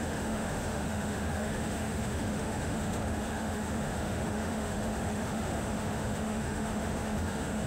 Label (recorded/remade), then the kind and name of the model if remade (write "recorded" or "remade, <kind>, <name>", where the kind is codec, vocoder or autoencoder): remade, autoencoder, DAC-VAE